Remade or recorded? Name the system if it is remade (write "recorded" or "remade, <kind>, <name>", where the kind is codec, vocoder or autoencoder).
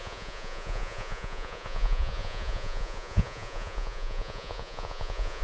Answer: remade, vocoder, Vocos